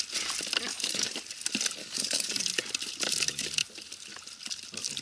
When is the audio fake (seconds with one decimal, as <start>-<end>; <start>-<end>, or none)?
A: 0.7-1.2; 1.8-2.4